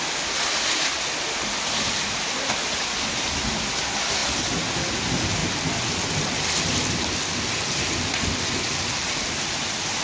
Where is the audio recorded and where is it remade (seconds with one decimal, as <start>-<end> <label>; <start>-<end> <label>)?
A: 0.0-10.0 recorded